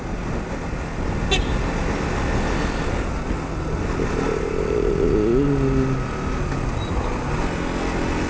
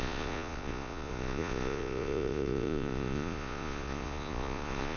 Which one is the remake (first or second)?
second